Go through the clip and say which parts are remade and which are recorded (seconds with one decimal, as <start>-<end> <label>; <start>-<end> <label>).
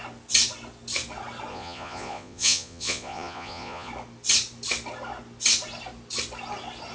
0.0-1.5 recorded; 1.5-3.9 remade; 3.9-6.9 recorded